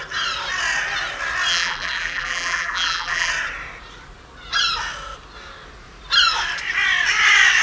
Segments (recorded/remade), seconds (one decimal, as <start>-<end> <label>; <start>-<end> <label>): 0.0-1.5 recorded; 1.5-3.3 remade; 3.3-7.6 recorded